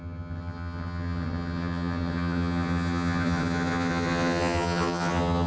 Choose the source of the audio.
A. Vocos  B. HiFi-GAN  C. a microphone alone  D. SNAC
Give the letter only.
B